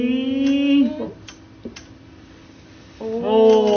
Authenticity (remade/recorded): recorded